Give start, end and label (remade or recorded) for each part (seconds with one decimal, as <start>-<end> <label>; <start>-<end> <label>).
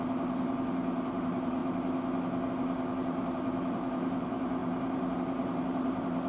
0.0-1.6 remade; 1.6-2.5 recorded; 2.5-6.3 remade